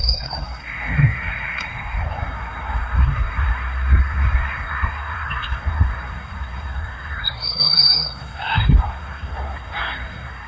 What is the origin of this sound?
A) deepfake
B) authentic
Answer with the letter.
A